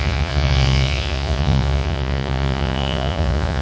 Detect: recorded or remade remade